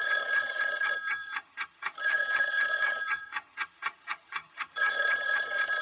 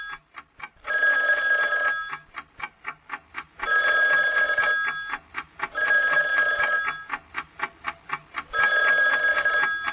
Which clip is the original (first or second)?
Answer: second